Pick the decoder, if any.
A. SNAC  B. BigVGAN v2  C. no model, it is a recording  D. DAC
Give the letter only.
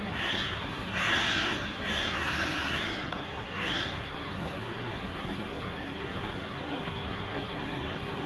A